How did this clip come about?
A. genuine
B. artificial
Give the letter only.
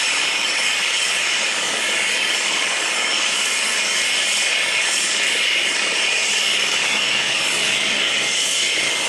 B